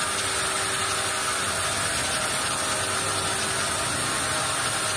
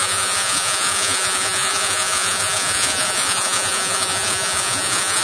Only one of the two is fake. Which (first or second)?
second